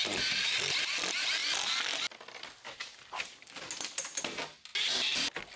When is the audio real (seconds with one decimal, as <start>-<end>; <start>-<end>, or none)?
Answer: 0.0-5.6